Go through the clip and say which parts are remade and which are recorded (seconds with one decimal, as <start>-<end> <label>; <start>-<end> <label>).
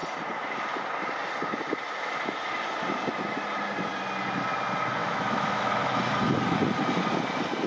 0.0-5.0 recorded; 5.0-5.9 remade; 5.9-7.7 recorded